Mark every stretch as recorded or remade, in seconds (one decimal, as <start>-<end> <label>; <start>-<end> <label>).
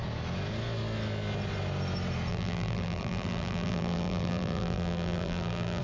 0.0-2.3 recorded; 2.3-5.8 remade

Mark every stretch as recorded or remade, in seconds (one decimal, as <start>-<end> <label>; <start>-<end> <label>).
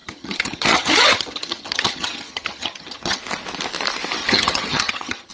0.0-3.2 remade; 3.2-4.2 recorded; 4.2-5.3 remade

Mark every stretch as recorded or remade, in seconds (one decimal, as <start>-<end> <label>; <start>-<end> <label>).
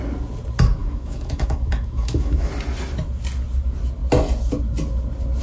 0.0-0.8 recorded; 0.8-2.5 remade; 2.5-5.4 recorded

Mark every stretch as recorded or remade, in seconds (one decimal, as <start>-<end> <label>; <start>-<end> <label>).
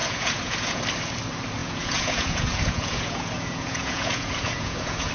0.0-0.8 remade; 0.8-1.6 recorded; 1.6-5.1 remade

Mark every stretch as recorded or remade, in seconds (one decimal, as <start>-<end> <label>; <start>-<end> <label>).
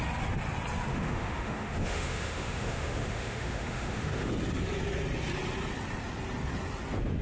0.0-0.9 recorded; 0.9-4.3 remade; 4.3-7.2 recorded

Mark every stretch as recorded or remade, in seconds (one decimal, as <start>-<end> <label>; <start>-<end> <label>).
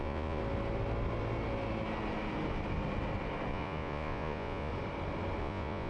0.0-0.4 remade; 0.4-3.5 recorded; 3.5-4.7 remade; 4.7-5.4 recorded; 5.4-5.9 remade